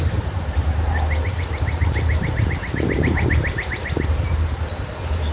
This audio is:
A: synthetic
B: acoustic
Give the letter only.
A